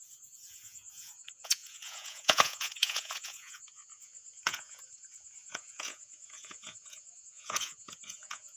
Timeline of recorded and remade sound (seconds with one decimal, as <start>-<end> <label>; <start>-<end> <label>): 0.0-8.6 remade